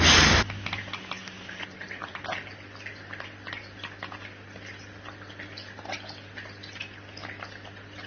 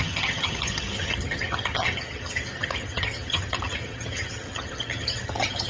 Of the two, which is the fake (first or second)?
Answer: second